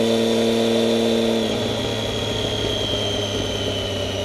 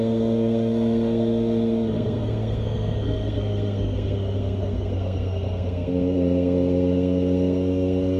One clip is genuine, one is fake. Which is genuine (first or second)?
first